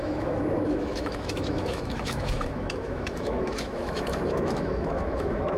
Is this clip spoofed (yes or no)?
yes